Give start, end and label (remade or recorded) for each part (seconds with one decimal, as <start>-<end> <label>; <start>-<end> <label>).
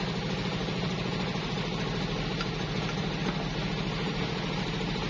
0.0-5.1 recorded